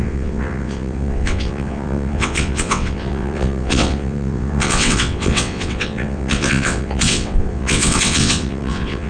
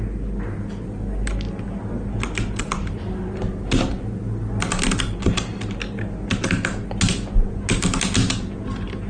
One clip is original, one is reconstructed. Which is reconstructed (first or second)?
first